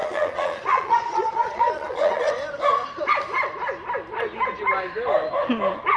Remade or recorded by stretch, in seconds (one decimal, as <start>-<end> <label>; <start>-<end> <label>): 0.0-2.3 remade; 2.3-6.0 recorded